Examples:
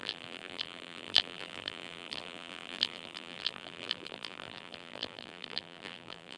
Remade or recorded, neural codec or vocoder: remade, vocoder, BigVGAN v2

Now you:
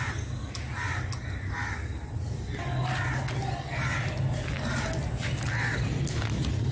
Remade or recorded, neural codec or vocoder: recorded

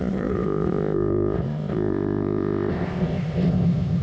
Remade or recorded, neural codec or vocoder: remade, codec, ZipCodec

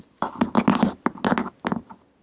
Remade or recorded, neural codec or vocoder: recorded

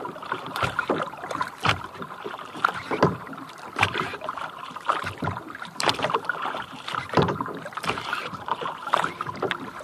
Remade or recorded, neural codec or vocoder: remade, vocoder, BigVGAN v2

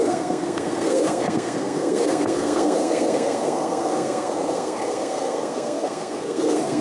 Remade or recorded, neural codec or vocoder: remade, codec, SNAC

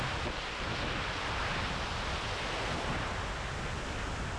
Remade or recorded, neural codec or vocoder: recorded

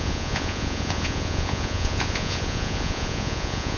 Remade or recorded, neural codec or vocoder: remade, vocoder, Vocos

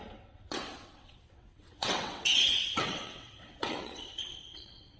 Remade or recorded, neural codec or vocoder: remade, vocoder, WaveNeXt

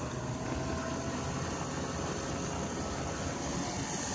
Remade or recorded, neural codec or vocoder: recorded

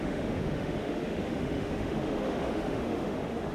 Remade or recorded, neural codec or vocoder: remade, autoencoder, DAC-VAE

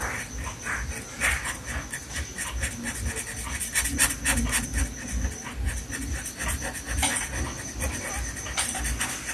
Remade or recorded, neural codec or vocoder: recorded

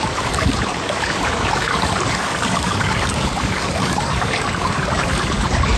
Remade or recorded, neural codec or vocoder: remade, codec, DAC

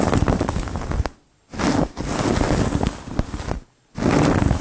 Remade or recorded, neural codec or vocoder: recorded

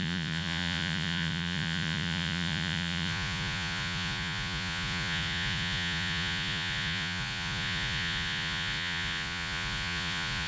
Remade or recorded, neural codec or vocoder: remade, vocoder, Vocos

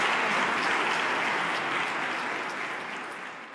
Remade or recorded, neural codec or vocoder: recorded